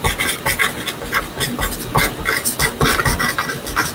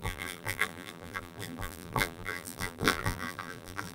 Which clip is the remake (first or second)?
second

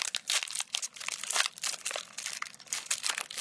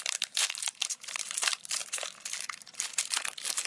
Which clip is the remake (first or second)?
second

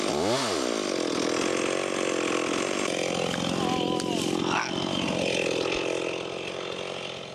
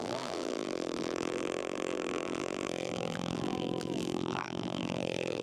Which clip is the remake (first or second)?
second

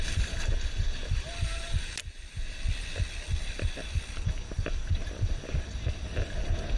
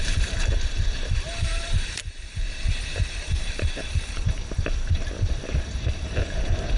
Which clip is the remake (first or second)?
second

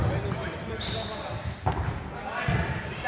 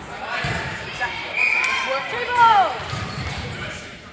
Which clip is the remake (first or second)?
second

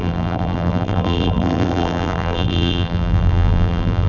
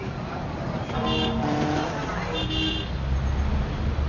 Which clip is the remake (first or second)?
first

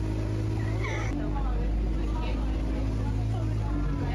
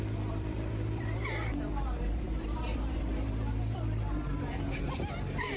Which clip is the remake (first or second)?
second